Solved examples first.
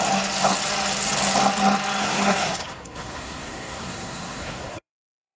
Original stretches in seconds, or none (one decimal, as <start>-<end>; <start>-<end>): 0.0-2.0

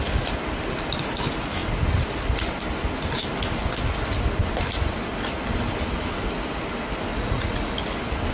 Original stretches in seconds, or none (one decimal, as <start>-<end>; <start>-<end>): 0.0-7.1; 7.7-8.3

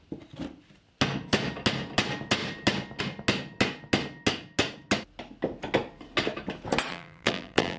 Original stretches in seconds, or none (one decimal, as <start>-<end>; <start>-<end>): 0.0-6.9

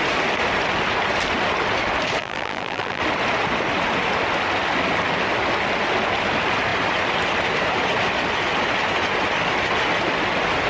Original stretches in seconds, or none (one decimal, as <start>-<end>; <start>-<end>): 0.0-2.2; 3.0-10.7

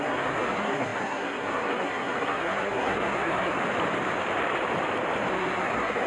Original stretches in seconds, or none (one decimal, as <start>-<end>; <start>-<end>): 3.6-5.3

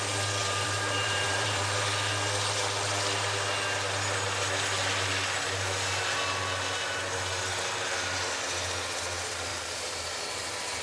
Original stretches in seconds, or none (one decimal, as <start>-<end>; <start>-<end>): 0.0-0.4; 1.8-9.5; 10.2-10.8

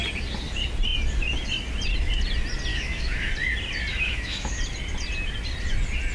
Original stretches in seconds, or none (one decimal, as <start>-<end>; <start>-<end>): 0.0-2.7; 3.3-3.9; 4.6-6.1